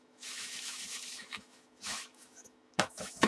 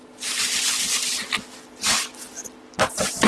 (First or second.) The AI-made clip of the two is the first